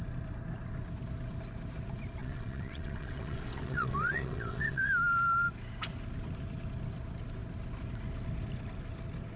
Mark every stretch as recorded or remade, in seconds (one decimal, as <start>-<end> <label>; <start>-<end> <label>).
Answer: 0.0-2.2 recorded; 2.2-4.9 remade; 4.9-9.4 recorded